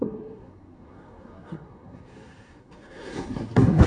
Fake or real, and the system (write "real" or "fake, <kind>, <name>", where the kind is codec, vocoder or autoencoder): fake, codec, SNAC